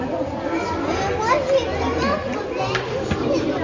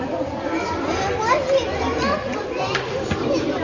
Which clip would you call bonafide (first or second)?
first